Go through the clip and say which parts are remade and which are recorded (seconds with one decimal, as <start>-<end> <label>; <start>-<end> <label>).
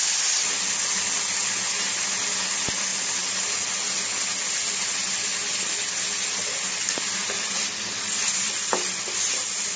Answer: 0.0-2.9 recorded; 2.9-3.5 remade; 3.5-9.8 recorded